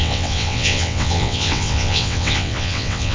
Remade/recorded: remade